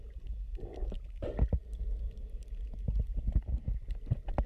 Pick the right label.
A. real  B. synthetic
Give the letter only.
A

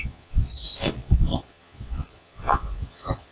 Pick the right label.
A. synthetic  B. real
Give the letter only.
A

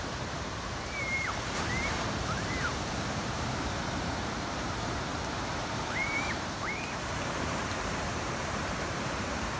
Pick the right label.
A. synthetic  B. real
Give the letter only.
A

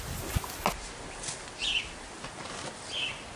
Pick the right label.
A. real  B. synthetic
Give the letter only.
A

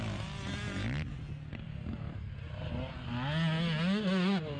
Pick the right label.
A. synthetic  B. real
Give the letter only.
B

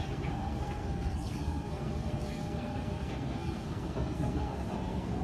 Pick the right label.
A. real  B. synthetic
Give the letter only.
B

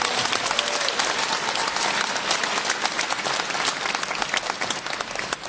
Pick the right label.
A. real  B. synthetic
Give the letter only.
A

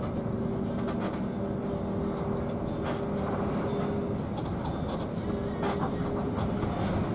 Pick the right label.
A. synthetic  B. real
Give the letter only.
B